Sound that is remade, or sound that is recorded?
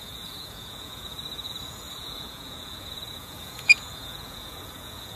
remade